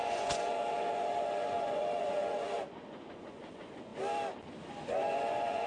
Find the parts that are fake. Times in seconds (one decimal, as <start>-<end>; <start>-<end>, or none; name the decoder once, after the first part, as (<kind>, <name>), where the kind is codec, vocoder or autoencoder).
0.0-3.9 (vocoder, Vocos); 4.7-5.7